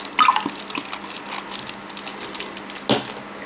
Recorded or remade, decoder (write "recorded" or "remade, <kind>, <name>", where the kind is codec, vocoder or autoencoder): recorded